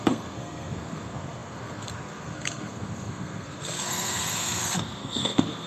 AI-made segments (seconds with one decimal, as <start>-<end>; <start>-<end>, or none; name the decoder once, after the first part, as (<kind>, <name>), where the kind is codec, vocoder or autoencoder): 0.0-5.7 (codec, SNAC)